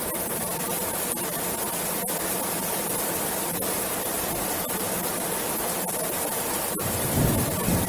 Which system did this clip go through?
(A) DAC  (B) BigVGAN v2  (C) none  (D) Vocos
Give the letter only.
C